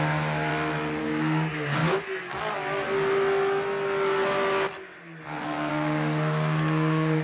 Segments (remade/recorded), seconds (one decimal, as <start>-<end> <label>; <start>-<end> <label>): 0.0-0.5 remade; 0.5-1.0 recorded; 1.0-1.8 remade; 1.8-5.7 recorded; 5.7-7.2 remade